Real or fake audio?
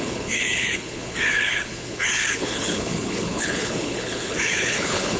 fake